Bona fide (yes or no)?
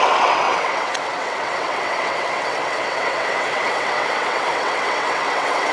no